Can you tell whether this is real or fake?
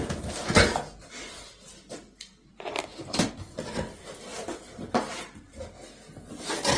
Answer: real